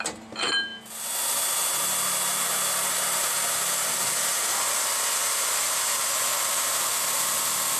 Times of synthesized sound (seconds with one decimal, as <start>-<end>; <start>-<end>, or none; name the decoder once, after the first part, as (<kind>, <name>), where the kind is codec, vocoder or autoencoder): none

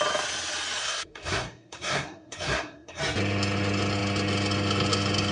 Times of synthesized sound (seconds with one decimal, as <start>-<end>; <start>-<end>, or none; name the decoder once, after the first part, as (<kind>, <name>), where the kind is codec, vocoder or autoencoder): 0.8-3.0 (codec, SNAC)

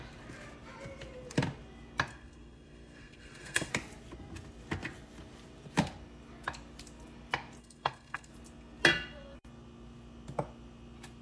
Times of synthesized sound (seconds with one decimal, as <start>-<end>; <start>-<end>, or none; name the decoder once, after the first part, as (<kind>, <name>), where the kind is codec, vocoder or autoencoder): 2.1-3.7 (codec, SNAC); 7.6-8.3